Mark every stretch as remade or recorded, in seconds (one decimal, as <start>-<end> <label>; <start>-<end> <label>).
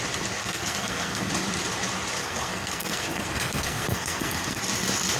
0.0-0.4 recorded; 0.4-1.3 remade; 1.3-2.2 recorded; 2.2-4.6 remade; 4.6-5.2 recorded